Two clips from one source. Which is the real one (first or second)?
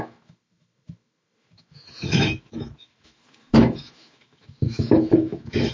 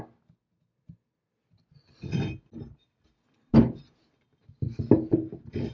second